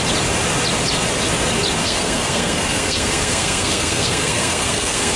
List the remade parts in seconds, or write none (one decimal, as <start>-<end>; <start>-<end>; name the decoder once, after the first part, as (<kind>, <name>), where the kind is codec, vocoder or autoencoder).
1.8-5.2 (codec, SNAC)